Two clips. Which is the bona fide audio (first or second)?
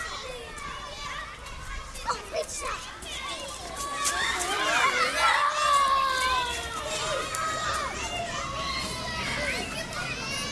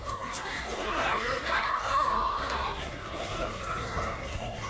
first